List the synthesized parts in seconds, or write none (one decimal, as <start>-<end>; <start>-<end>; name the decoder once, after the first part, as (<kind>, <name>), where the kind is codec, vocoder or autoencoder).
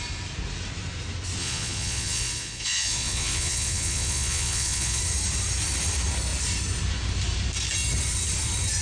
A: 1.4-5.0 (vocoder, Vocos)